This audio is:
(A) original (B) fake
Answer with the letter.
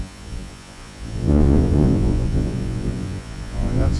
B